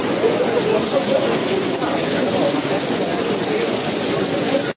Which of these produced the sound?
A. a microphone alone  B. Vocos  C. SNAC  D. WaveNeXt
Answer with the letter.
B